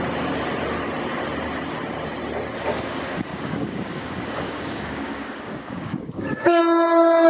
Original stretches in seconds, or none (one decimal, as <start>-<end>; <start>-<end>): 0.0-3.3; 6.6-7.3